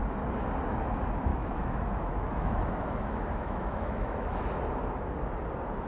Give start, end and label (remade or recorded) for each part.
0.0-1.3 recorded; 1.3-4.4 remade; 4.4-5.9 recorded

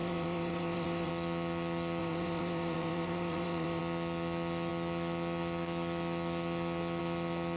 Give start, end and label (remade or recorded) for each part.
0.0-1.1 remade; 1.1-2.0 recorded; 2.0-3.8 remade; 3.8-7.6 recorded